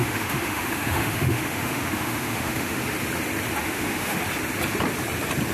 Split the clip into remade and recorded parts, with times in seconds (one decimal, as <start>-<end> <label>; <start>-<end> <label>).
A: 0.0-2.8 remade; 2.8-3.6 recorded; 3.6-4.2 remade; 4.2-5.5 recorded